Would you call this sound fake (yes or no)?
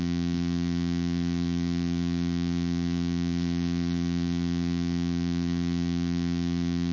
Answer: yes